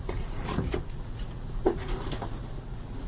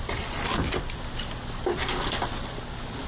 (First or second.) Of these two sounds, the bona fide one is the second